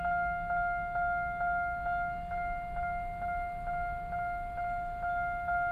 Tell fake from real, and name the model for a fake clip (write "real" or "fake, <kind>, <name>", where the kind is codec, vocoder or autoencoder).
real